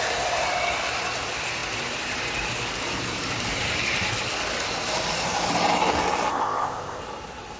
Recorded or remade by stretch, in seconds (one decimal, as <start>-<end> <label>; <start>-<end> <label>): 0.0-6.3 recorded; 6.3-7.0 remade; 7.0-7.6 recorded